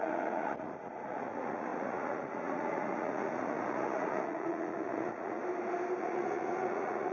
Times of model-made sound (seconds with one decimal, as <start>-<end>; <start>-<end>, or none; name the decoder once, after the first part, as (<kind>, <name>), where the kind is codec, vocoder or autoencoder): 0.0-5.4 (vocoder, Vocos); 6.0-7.1